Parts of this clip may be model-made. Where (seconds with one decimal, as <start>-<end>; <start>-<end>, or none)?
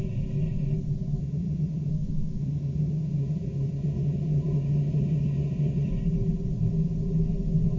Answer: 1.2-1.9; 2.4-5.9